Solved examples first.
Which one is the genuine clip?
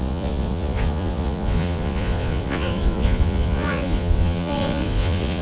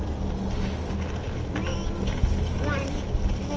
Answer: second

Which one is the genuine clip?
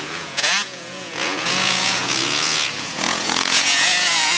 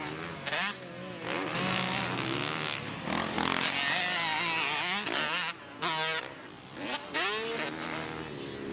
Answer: second